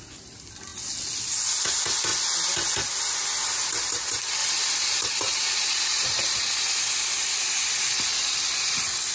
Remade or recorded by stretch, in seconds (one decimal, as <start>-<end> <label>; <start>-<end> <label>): 0.0-4.4 recorded; 4.4-6.4 remade; 6.4-9.1 recorded